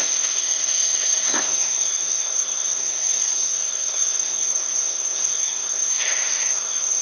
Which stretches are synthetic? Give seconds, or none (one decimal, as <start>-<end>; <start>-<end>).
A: 0.0-7.0